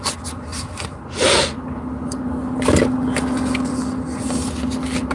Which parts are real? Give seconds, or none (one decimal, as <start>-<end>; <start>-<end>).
0.0-5.1